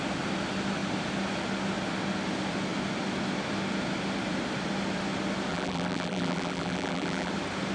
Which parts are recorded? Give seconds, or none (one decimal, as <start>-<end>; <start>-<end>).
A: 0.0-5.5; 7.3-7.7